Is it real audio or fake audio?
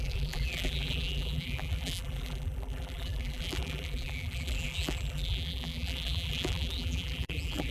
fake